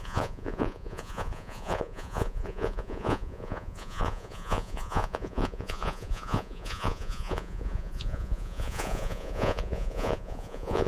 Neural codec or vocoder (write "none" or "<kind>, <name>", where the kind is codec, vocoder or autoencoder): vocoder, Vocos